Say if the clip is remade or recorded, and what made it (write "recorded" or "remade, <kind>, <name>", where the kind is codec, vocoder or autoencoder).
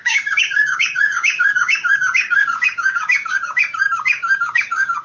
remade, codec, DAC